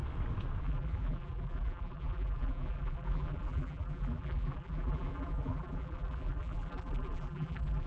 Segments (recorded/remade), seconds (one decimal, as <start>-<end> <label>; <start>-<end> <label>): 0.0-0.6 recorded; 0.6-7.9 remade